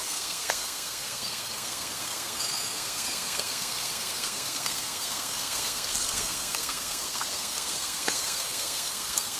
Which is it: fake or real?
fake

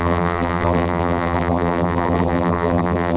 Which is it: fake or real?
fake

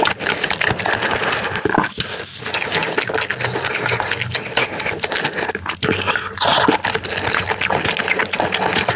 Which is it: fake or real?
real